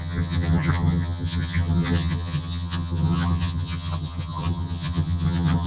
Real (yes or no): no